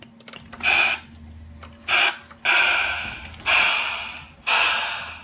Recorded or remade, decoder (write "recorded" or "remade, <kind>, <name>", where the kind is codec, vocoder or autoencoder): recorded